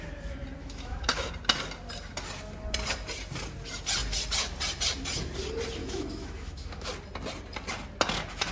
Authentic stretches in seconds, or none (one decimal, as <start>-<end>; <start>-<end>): 0.0-0.6; 1.3-5.8; 6.9-8.5